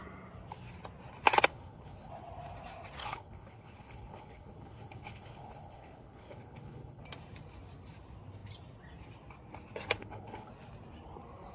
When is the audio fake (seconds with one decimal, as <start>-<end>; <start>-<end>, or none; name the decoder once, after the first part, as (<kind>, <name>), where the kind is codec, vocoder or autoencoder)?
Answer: 1.5-2.1 (codec, HILCodec); 3.0-7.0; 10.0-10.5